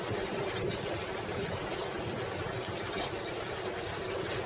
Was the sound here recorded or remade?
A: recorded